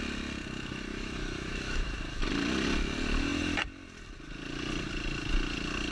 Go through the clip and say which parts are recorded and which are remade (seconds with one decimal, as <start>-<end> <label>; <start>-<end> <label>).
0.0-0.9 recorded; 0.9-2.2 remade; 2.2-5.9 recorded